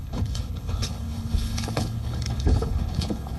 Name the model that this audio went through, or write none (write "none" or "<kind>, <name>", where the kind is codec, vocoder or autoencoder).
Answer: codec, HILCodec